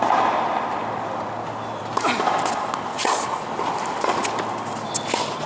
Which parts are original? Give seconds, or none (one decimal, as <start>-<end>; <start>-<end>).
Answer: 0.0-2.9; 3.4-5.5